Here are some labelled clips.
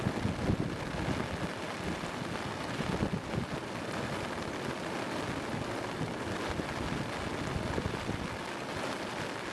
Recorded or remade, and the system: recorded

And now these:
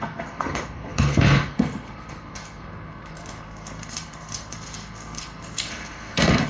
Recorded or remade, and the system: remade, codec, SNAC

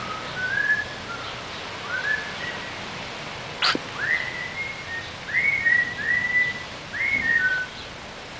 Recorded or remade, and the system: recorded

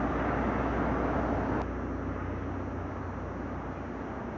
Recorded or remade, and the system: recorded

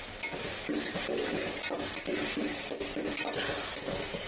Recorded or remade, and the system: recorded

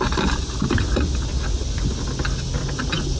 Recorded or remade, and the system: recorded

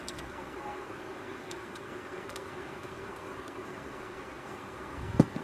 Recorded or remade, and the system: remade, codec, SNAC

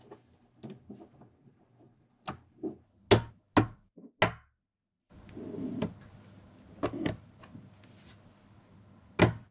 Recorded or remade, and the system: recorded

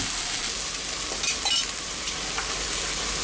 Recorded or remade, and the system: recorded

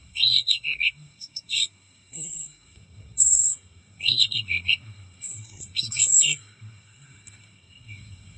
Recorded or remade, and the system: remade, codec, SNAC